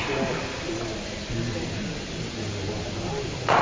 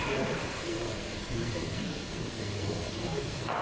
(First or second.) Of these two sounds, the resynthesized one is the second